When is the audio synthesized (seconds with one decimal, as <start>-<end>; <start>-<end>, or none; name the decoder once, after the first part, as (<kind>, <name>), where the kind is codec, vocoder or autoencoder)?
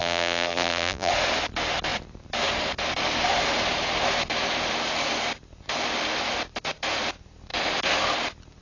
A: 0.0-1.1 (vocoder, BigVGAN v2)